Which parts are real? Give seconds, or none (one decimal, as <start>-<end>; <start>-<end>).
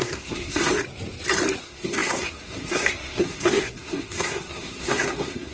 0.7-1.6